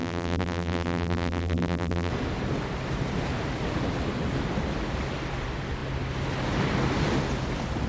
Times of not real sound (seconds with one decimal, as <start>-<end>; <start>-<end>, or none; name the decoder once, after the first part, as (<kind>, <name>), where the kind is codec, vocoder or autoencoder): 0.0-2.1 (vocoder, BigVGAN v2)